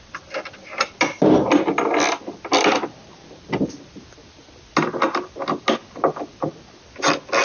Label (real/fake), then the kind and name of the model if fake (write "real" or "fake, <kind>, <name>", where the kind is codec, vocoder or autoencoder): real